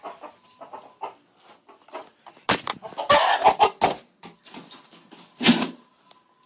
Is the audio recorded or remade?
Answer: recorded